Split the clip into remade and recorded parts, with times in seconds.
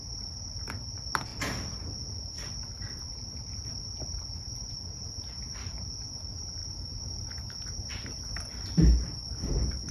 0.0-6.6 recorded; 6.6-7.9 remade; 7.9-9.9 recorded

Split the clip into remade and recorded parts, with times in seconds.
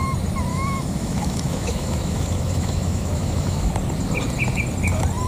0.0-0.5 recorded; 0.5-3.7 remade; 3.7-5.3 recorded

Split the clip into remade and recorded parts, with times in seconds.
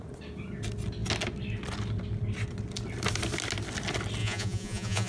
0.0-4.2 recorded; 4.2-5.1 remade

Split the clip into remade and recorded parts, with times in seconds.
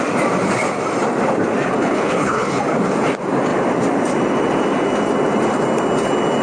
0.0-1.7 recorded; 1.7-2.6 remade; 2.6-6.4 recorded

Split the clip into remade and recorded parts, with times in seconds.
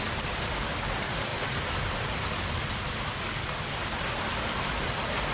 0.0-5.3 recorded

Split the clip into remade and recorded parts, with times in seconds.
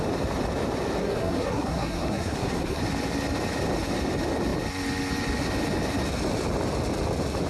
0.0-1.0 recorded; 1.0-2.8 remade; 2.8-7.5 recorded